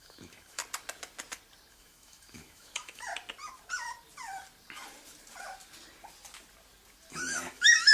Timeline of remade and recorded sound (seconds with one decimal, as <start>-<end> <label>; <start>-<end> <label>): 0.0-0.6 remade; 0.6-1.7 recorded; 1.7-3.1 remade; 3.1-7.1 recorded; 7.1-7.9 remade